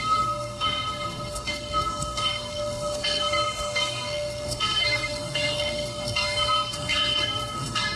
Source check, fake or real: fake